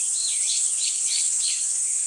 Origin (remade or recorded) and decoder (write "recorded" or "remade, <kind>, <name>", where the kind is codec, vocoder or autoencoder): remade, codec, HILCodec